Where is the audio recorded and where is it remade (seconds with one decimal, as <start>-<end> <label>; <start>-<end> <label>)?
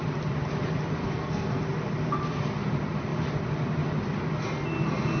0.0-1.0 recorded; 1.0-1.6 remade; 1.6-5.2 recorded